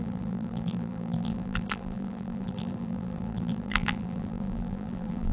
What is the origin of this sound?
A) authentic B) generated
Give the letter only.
B